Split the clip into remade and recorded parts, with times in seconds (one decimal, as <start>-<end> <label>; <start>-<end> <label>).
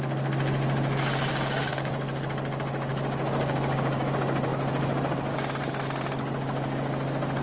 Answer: 0.0-1.3 recorded; 1.3-1.9 remade; 1.9-2.9 recorded; 2.9-4.1 remade; 4.1-7.4 recorded